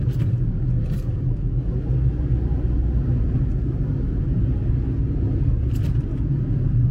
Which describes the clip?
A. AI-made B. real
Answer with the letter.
B